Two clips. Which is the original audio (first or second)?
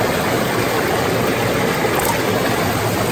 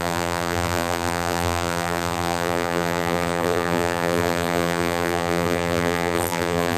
first